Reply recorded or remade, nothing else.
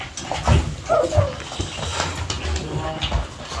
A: recorded